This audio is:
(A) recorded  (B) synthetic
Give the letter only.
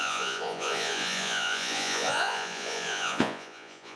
B